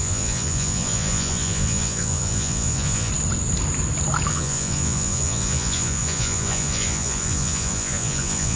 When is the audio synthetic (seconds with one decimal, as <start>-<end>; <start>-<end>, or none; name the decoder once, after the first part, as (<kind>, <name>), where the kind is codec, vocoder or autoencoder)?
0.0-3.1 (vocoder, Vocos); 4.3-8.6